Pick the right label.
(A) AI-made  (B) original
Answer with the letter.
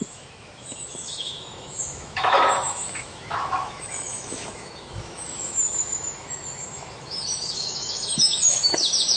A